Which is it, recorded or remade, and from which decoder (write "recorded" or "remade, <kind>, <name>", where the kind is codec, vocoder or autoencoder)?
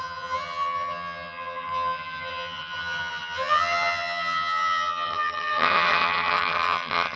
remade, vocoder, HiFi-GAN